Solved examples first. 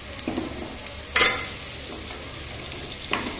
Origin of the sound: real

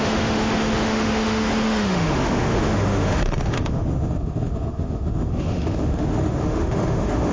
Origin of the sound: fake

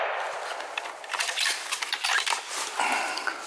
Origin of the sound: real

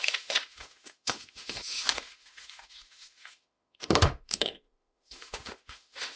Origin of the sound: fake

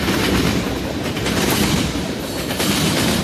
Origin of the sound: real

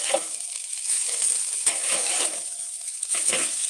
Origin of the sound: fake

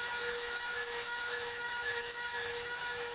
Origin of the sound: fake